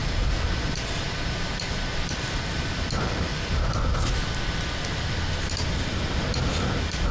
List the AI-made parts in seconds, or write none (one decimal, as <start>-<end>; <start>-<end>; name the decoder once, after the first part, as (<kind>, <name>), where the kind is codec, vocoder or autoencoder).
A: 0.0-3.6 (vocoder, BigVGAN v2)